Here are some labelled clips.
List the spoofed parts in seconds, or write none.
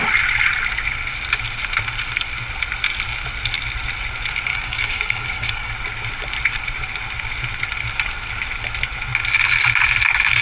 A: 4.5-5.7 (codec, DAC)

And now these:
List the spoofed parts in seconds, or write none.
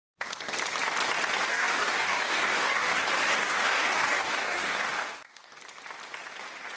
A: 1.5-5.6 (codec, DAC)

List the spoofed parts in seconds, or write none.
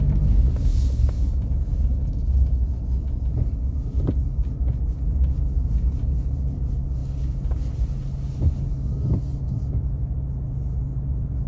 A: 0.7-1.3 (codec, DAC)